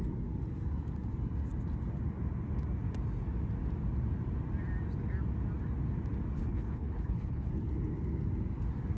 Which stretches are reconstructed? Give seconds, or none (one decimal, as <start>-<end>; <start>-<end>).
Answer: 6.4-7.5